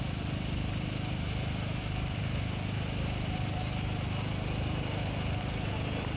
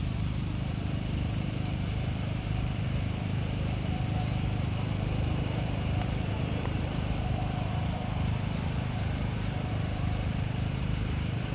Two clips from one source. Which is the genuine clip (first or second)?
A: first